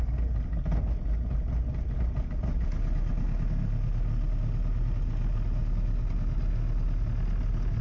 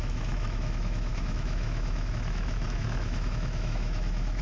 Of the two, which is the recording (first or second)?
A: first